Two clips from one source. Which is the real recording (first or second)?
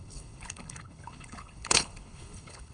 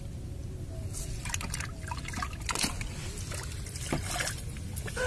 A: second